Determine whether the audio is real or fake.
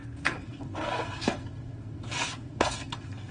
fake